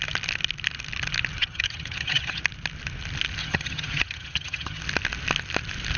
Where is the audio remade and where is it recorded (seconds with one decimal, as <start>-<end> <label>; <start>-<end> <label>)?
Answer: 0.0-1.4 recorded; 1.4-2.4 remade; 2.4-3.4 recorded; 3.4-4.8 remade; 4.8-6.0 recorded